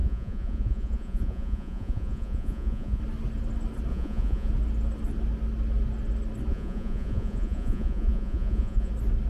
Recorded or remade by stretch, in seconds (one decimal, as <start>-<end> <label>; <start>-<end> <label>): 0.0-3.0 remade; 3.0-3.9 recorded; 3.9-4.5 remade; 4.5-6.5 recorded; 6.5-8.9 remade; 8.9-9.3 recorded